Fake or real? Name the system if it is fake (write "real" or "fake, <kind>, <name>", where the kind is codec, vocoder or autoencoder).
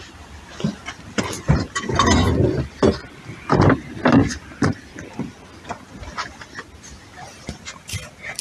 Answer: real